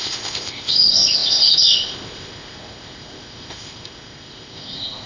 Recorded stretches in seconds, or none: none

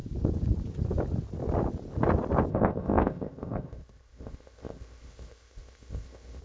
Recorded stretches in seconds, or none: 0.0-2.5